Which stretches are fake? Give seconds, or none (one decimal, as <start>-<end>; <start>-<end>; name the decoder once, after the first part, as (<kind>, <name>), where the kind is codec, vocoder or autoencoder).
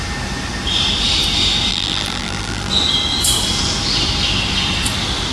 1.7-2.7 (vocoder, BigVGAN v2)